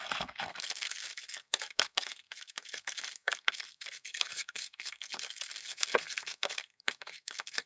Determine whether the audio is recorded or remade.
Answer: remade